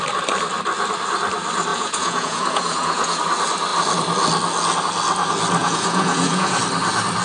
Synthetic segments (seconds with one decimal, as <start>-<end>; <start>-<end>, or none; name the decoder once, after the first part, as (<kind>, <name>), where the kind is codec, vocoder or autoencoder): 1.7-3.2 (vocoder, Vocos); 5.6-6.6